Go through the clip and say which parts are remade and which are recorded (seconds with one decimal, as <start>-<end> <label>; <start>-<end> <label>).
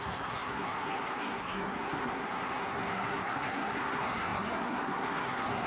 0.0-5.7 remade